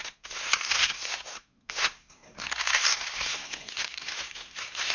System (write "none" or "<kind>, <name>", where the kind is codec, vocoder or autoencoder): codec, SNAC